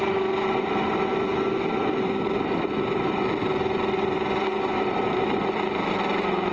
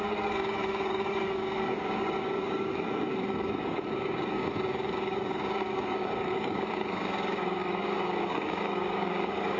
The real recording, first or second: first